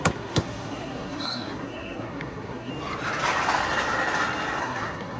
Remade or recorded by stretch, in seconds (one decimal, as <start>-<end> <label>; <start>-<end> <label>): 0.0-2.7 remade; 2.7-4.6 recorded; 4.6-5.2 remade